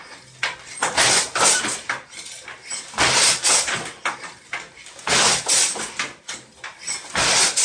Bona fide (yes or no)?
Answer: yes